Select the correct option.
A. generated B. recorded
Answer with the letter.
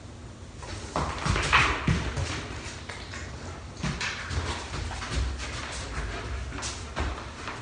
B